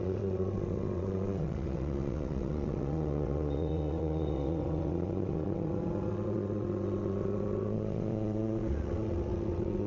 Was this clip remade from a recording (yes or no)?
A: yes